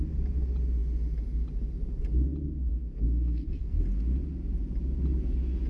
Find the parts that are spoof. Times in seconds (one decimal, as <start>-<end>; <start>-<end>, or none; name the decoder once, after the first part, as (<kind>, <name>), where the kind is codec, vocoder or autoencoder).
2.7-3.8 (codec, SNAC)